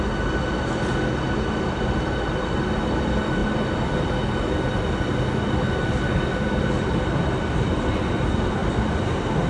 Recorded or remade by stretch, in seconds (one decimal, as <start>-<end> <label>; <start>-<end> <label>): 0.0-9.5 recorded